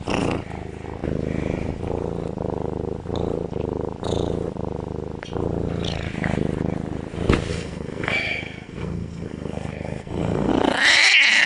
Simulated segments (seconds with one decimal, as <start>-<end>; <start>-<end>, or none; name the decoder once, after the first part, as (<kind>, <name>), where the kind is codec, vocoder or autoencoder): 7.5-10.5 (codec, SNAC)